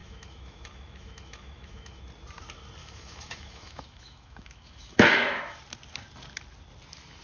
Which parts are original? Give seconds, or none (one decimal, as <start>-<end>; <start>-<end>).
2.0-2.8; 5.6-7.2